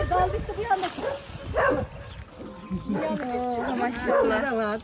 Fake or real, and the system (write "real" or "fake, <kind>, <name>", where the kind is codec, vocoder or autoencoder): real